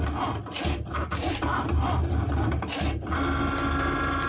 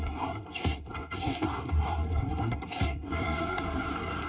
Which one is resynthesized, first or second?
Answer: second